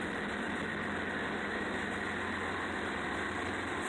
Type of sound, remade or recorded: recorded